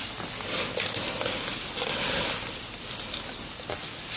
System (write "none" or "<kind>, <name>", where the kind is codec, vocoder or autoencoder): none